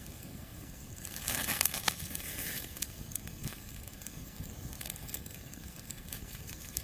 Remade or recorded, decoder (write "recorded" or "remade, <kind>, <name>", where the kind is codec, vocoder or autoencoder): remade, codec, SNAC